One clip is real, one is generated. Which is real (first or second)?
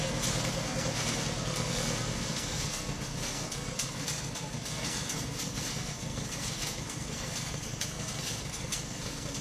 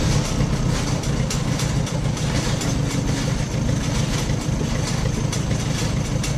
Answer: second